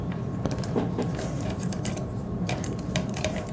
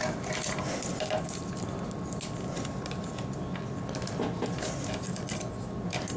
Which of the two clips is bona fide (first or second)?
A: second